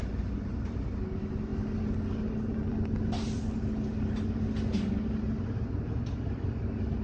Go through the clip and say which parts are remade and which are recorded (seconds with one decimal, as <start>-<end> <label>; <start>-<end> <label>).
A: 0.0-7.0 recorded